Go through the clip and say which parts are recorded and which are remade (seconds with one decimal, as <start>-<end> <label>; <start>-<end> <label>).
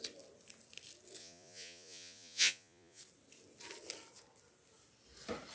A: 0.0-1.2 recorded; 1.2-3.0 remade; 3.0-5.5 recorded